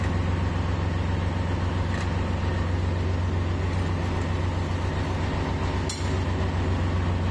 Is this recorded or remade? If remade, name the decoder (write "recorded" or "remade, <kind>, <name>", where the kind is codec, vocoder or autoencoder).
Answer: recorded